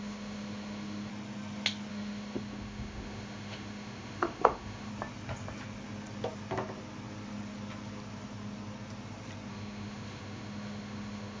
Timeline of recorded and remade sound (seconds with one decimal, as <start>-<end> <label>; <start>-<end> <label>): 0.0-1.1 remade; 1.1-1.9 recorded; 1.9-4.9 remade; 4.9-9.5 recorded; 9.5-11.4 remade